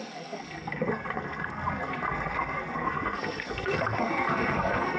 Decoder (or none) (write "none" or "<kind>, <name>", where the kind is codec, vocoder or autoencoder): codec, SNAC